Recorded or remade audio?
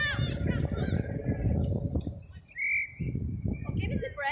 recorded